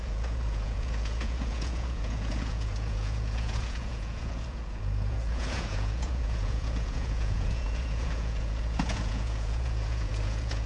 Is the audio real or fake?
fake